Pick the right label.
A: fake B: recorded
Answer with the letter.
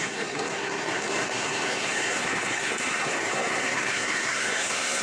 A